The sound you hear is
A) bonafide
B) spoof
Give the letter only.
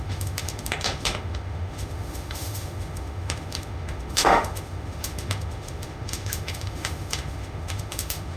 B